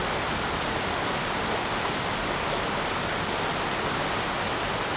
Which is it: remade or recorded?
recorded